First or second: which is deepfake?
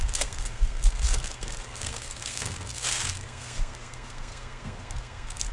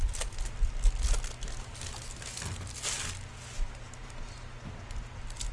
first